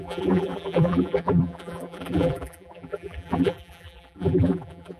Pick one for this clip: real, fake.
fake